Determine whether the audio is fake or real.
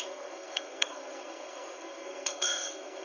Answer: fake